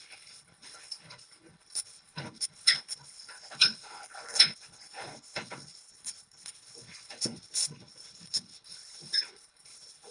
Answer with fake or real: fake